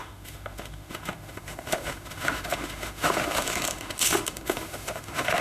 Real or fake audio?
fake